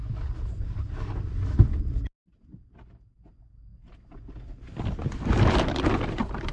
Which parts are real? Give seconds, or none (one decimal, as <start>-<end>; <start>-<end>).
0.0-6.5